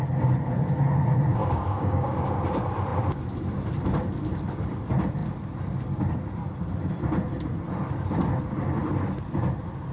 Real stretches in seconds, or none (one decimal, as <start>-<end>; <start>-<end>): 0.0-1.4; 2.2-9.9